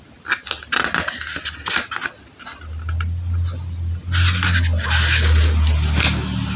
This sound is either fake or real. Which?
real